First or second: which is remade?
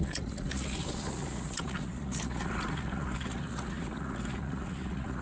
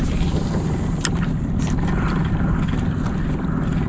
first